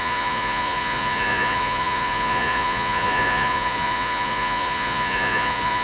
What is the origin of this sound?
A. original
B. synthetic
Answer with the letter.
B